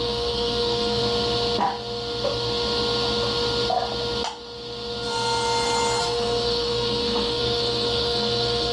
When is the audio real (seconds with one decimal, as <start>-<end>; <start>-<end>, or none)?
1.0-6.0